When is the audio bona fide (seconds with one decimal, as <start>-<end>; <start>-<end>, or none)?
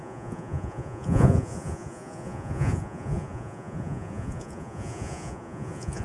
none